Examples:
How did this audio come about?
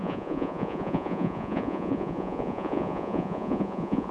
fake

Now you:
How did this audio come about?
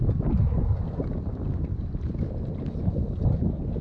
real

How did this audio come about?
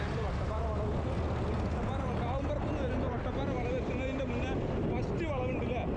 real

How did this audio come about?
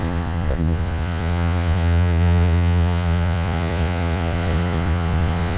fake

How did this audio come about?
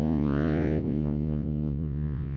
fake